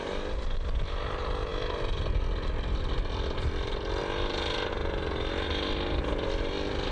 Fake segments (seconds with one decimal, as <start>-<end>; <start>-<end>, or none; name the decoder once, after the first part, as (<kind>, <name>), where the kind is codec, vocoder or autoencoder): none